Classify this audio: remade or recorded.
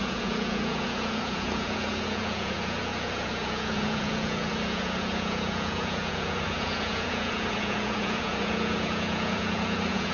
remade